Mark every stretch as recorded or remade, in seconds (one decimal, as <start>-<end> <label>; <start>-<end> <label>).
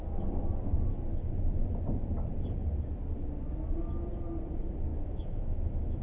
0.0-4.9 recorded; 4.9-6.0 remade